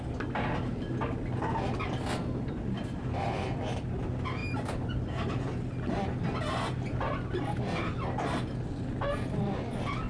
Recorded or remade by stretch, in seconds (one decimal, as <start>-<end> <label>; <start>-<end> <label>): 0.0-10.1 recorded